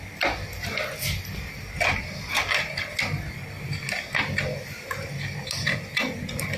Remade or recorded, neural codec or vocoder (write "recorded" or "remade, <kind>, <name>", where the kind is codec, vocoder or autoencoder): recorded